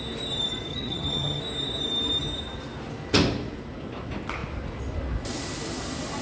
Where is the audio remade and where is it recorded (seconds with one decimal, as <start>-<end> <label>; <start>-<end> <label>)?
0.0-0.7 recorded; 0.7-1.4 remade; 1.4-6.2 recorded